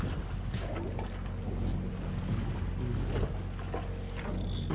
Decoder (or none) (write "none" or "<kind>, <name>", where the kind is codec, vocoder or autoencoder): none